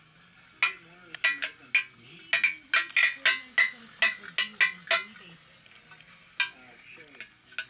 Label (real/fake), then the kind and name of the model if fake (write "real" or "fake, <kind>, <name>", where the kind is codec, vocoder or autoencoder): real